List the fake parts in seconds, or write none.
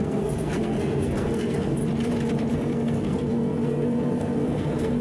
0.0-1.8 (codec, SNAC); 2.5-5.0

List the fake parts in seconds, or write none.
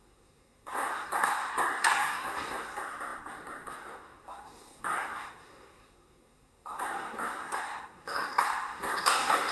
0.0-9.5 (codec, SNAC)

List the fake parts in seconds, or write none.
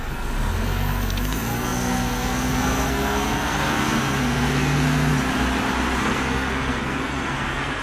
0.0-5.1 (codec, SNAC); 6.0-7.8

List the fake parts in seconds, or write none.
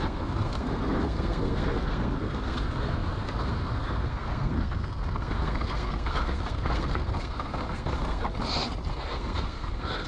0.0-8.2 (codec, SNAC); 8.9-10.1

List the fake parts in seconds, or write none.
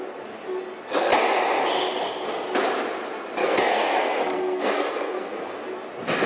3.4-5.5 (codec, SNAC)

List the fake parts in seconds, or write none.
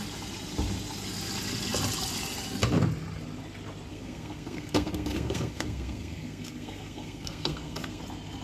3.9-8.0 (codec, SNAC)